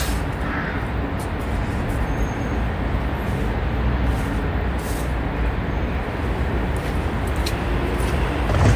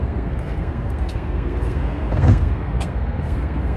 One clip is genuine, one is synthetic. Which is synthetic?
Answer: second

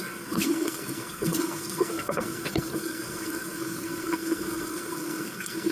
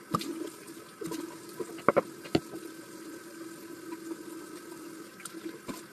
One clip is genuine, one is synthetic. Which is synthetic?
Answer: first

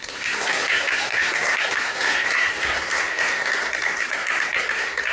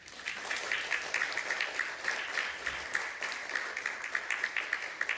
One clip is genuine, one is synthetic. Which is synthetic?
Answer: first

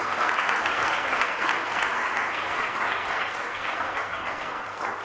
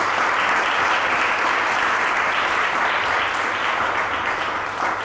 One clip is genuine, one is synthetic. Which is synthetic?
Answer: first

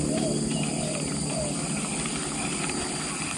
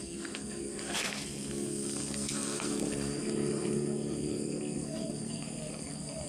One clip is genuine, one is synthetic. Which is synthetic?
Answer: second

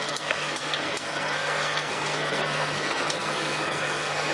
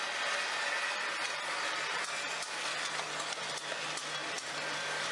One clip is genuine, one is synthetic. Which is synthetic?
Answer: first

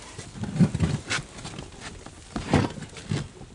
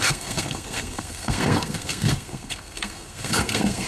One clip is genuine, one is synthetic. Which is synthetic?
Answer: second